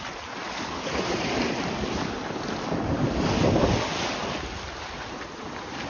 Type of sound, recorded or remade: recorded